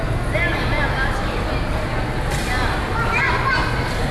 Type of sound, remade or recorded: recorded